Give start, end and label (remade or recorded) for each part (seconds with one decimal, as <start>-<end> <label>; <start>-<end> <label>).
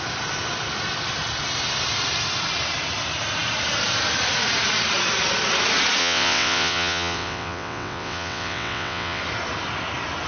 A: 0.0-6.0 recorded; 6.0-9.2 remade; 9.2-10.3 recorded